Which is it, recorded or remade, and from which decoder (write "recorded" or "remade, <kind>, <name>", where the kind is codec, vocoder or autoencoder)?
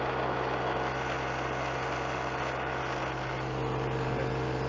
recorded